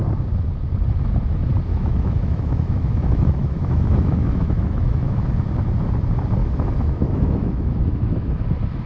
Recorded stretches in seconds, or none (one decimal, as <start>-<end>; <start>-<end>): 0.0-1.7; 5.3-6.4; 8.3-8.9